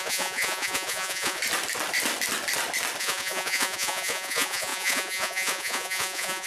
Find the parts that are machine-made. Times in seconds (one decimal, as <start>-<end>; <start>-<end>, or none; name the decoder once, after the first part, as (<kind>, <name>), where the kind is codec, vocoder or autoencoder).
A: 0.0-1.4 (vocoder, Vocos); 3.0-6.5